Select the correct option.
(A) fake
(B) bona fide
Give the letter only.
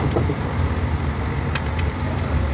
B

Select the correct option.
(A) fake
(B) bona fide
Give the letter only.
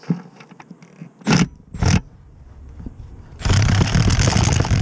B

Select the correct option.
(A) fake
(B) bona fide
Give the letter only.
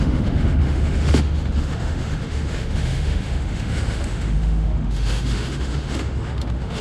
A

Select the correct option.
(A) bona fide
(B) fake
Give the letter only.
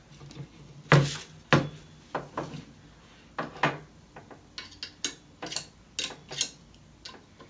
A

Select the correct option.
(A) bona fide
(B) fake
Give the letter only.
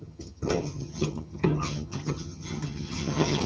B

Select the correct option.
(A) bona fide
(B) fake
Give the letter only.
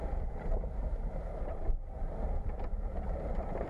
B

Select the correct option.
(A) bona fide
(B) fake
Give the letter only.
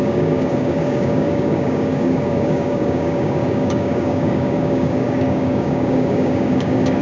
B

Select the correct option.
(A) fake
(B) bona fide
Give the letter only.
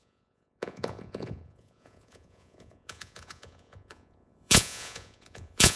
A